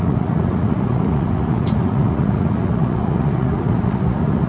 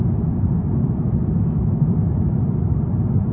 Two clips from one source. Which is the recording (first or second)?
second